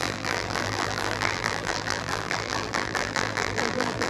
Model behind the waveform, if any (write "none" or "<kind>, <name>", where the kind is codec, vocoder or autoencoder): vocoder, BigVGAN v2